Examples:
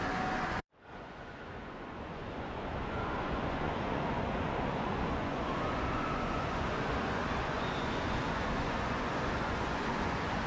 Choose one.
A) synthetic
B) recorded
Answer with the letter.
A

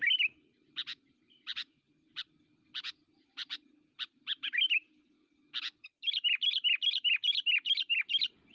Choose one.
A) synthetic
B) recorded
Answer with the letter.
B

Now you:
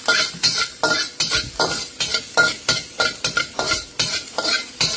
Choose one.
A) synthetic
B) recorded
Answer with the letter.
B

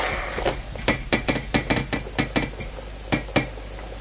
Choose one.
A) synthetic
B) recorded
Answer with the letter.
B